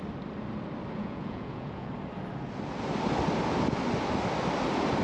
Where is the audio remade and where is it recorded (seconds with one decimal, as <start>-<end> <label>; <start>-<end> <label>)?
0.0-1.0 recorded; 1.0-1.9 remade; 1.9-5.0 recorded

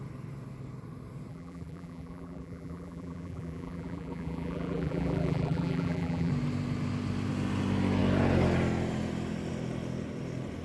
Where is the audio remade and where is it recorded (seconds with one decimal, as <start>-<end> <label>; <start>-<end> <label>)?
0.0-1.3 recorded; 1.3-6.3 remade; 6.3-10.6 recorded

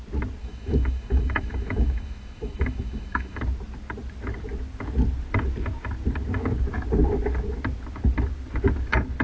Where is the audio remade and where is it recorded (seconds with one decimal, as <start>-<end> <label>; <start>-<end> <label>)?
0.0-0.4 recorded; 0.4-3.4 remade; 3.4-9.2 recorded

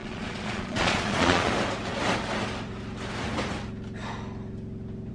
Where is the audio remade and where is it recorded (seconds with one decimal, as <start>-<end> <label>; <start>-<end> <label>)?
0.0-1.5 remade; 1.5-5.1 recorded

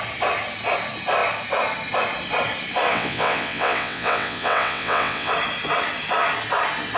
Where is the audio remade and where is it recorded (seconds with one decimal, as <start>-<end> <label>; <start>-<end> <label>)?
0.0-2.9 recorded; 2.9-5.3 remade; 5.3-7.0 recorded

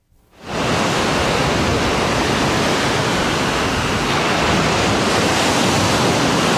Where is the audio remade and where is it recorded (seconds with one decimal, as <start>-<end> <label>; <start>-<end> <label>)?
0.0-6.6 recorded

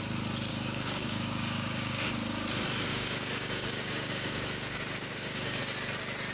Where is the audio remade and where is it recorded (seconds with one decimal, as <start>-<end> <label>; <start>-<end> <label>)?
0.0-0.5 recorded; 0.5-2.1 remade; 2.1-2.9 recorded; 2.9-5.6 remade; 5.6-6.3 recorded